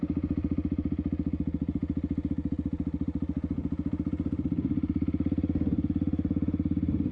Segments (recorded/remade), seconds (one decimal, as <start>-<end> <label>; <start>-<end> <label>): 0.0-7.1 recorded